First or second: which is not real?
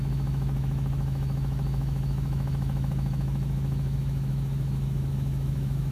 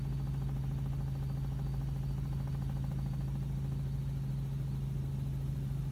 first